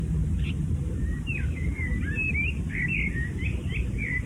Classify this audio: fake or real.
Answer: fake